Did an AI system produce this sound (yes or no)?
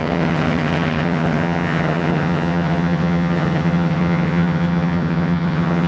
yes